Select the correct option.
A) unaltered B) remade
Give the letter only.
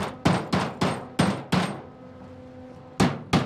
A